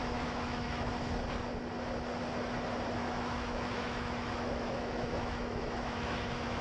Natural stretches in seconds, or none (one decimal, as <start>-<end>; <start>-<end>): 0.9-3.0